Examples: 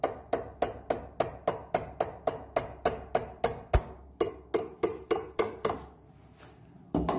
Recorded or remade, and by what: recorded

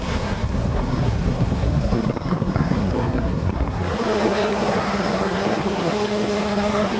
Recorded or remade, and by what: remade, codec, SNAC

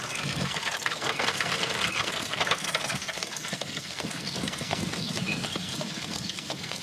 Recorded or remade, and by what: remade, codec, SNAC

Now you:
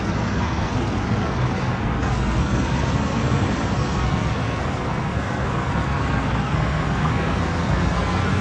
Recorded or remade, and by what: remade, codec, SNAC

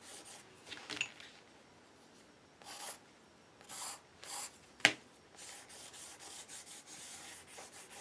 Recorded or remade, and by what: recorded